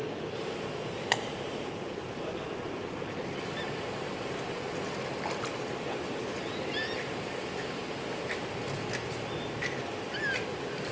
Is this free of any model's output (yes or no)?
yes